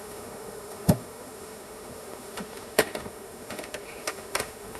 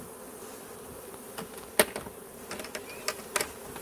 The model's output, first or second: first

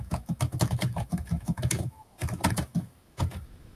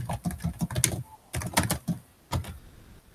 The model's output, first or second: first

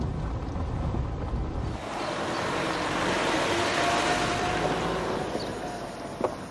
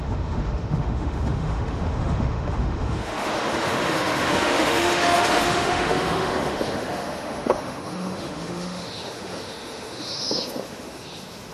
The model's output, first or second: second